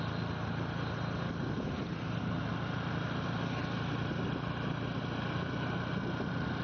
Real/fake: real